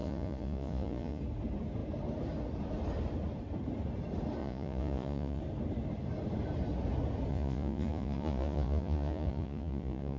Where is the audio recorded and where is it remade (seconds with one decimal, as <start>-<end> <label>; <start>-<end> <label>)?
0.0-1.2 remade; 1.2-4.4 recorded; 4.4-5.4 remade; 5.4-7.3 recorded; 7.3-10.2 remade